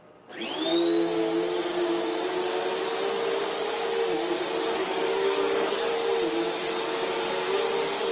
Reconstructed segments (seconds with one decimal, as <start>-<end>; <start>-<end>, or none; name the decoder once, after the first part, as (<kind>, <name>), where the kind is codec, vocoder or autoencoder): 4.8-5.9 (codec, DAC)